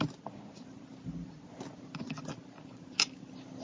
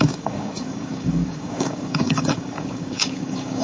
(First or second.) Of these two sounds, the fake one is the second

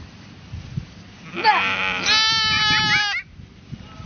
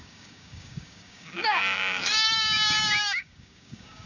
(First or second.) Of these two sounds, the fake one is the second